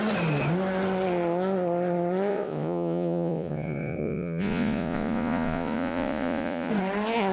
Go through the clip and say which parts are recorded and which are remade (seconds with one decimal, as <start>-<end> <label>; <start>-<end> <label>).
0.0-2.3 recorded; 2.3-6.7 remade; 6.7-7.3 recorded